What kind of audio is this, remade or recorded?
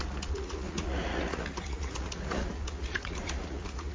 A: remade